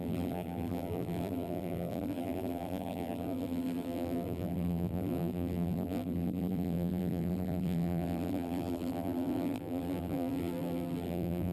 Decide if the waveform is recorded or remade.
remade